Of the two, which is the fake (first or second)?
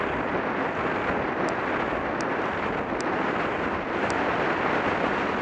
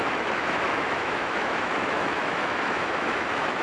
second